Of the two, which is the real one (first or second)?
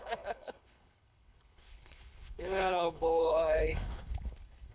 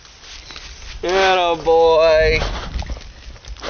second